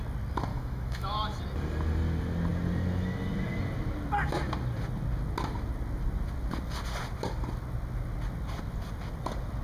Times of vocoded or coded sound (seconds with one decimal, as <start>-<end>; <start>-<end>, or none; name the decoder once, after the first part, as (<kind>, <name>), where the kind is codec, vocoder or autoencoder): 0.5-1.4 (autoencoder, DAC-VAE)

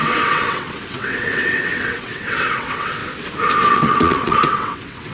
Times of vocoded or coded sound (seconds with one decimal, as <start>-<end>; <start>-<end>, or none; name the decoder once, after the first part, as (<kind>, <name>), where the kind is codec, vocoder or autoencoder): 0.0-3.0 (vocoder, WaveNeXt); 3.7-5.1

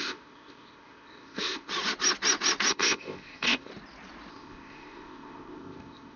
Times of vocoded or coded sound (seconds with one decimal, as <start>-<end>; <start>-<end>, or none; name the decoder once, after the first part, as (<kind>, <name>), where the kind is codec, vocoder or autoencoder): 0.0-1.7 (codec, ZipCodec); 2.7-3.7; 4.3-6.2